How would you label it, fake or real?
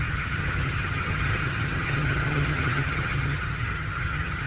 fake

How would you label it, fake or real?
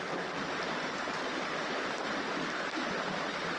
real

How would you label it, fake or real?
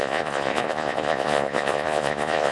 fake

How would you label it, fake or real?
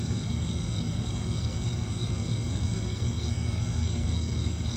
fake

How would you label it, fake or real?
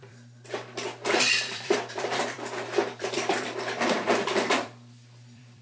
fake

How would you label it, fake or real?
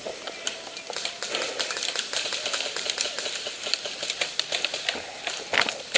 real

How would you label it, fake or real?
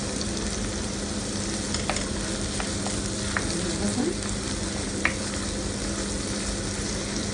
real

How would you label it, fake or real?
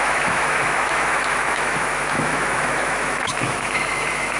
fake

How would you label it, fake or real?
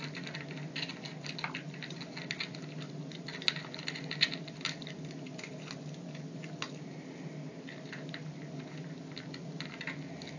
real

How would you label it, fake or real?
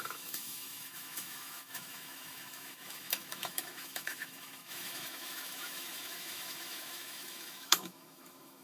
fake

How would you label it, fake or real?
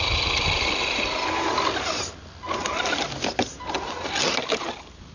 real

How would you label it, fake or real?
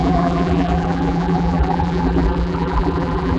fake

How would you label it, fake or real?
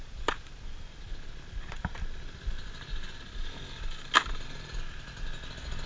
real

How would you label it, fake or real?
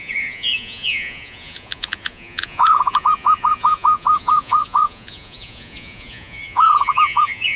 fake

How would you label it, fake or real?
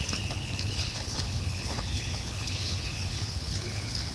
fake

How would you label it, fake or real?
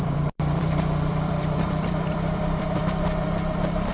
fake